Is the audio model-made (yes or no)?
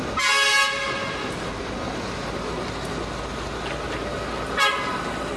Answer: no